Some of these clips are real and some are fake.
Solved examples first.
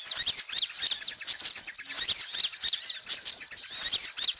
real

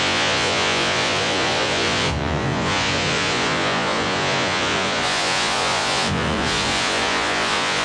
fake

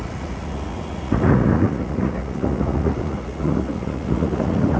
fake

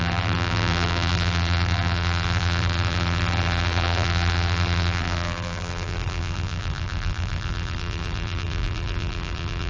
fake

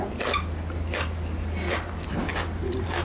real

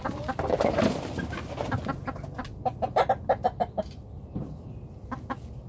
real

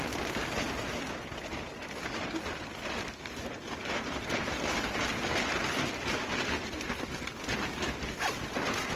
real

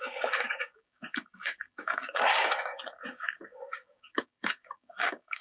fake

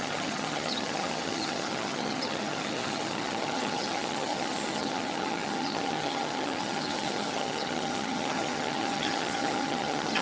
fake